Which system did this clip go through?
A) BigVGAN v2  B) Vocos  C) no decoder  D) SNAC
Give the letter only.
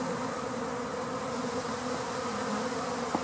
C